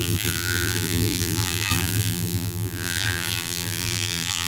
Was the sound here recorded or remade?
remade